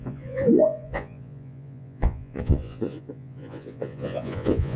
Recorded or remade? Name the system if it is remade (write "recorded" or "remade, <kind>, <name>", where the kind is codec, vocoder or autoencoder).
remade, vocoder, Vocos